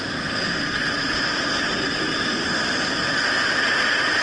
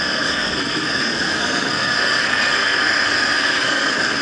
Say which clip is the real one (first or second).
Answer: first